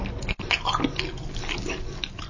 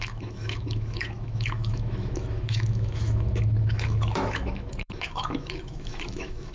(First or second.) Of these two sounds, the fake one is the second